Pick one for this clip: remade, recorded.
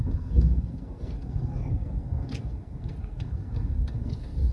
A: remade